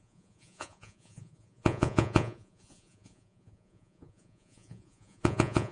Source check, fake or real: fake